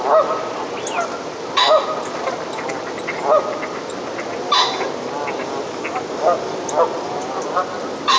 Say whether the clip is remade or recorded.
recorded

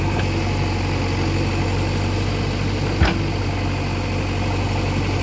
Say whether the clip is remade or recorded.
recorded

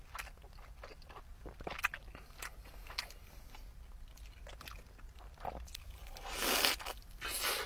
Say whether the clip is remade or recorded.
recorded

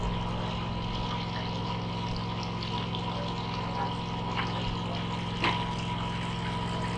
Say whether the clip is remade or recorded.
recorded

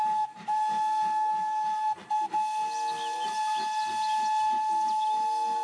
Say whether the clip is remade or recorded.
recorded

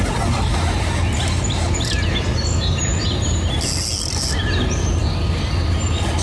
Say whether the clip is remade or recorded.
recorded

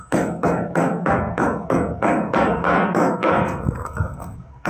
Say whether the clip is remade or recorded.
remade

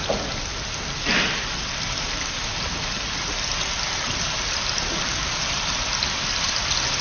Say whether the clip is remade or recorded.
recorded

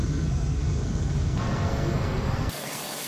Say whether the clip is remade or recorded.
remade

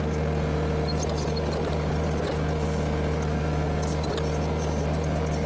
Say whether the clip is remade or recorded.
recorded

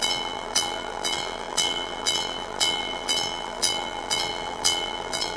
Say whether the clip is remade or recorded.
remade